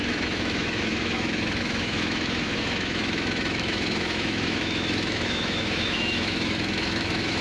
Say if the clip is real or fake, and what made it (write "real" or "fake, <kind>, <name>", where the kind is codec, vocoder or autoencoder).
fake, autoencoder, DAC-VAE